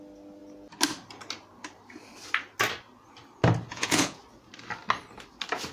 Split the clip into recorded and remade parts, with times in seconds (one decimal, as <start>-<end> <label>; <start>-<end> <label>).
0.0-3.7 recorded; 3.7-4.2 remade; 4.2-5.7 recorded